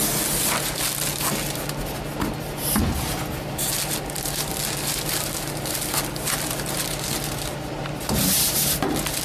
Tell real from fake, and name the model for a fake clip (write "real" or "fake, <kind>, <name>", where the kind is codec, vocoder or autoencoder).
real